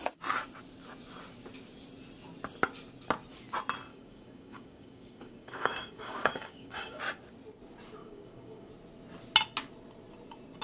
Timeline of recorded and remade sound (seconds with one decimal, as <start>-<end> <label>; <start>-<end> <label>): 0.0-3.9 recorded; 3.9-7.0 remade; 7.0-8.0 recorded; 8.0-8.7 remade; 8.7-10.6 recorded